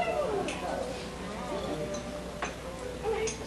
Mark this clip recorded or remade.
recorded